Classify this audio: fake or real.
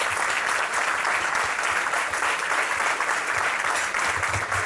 real